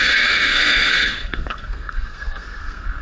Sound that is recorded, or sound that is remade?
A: remade